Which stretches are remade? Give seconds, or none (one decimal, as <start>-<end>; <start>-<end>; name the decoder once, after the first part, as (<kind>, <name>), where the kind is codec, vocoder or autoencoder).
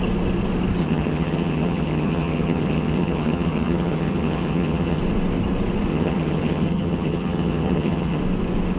0.8-5.0 (vocoder, HiFi-GAN); 5.9-8.2